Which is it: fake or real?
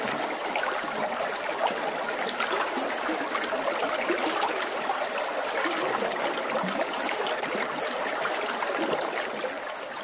real